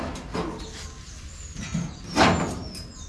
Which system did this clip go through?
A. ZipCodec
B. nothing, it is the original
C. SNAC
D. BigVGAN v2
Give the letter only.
B